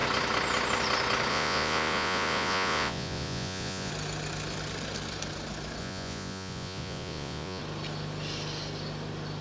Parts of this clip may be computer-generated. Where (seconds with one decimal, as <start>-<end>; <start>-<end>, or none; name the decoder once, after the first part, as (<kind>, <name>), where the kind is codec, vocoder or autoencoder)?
1.3-3.9 (vocoder, Vocos); 5.8-7.6